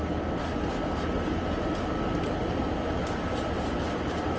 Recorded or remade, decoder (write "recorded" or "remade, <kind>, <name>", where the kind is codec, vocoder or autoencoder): recorded